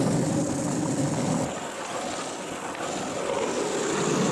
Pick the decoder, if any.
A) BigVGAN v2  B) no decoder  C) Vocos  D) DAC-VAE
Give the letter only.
B